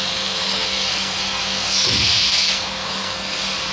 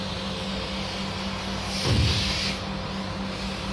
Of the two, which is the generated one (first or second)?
first